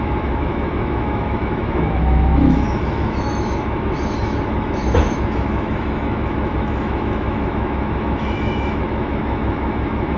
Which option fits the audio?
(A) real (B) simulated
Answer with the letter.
B